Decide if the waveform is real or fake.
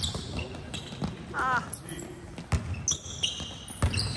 real